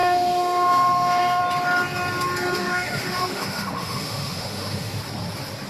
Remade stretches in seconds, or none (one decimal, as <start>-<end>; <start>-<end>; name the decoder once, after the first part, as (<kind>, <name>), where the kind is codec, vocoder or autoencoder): 0.0-1.4 (autoencoder, DAC-VAE); 2.6-5.0